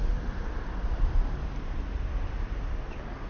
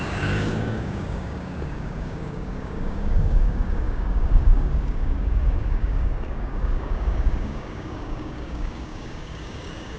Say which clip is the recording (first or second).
first